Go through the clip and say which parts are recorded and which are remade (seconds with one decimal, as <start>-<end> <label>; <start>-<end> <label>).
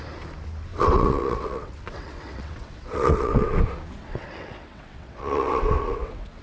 0.0-0.7 recorded; 0.7-3.6 remade; 3.6-4.0 recorded; 4.0-6.4 remade